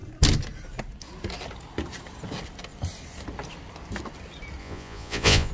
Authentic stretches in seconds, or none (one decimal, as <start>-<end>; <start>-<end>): 0.0-4.6